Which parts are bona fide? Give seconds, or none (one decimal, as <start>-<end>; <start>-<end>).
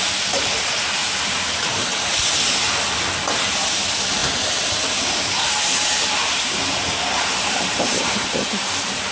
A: 1.9-3.3